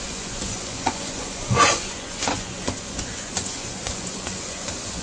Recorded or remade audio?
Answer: remade